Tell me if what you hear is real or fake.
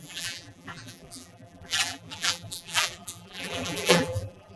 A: fake